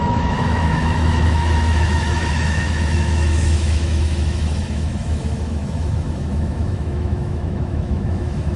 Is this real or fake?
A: fake